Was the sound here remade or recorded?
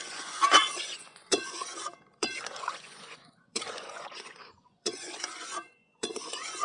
remade